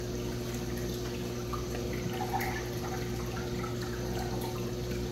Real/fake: real